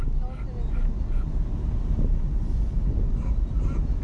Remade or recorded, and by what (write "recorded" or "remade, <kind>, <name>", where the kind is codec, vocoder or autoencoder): recorded